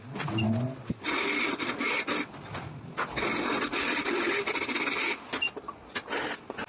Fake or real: real